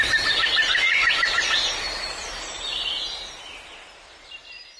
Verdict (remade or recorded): recorded